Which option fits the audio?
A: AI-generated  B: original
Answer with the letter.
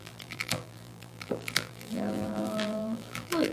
A